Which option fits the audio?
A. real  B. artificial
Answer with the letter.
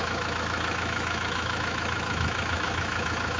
B